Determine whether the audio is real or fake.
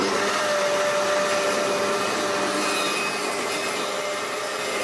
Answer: real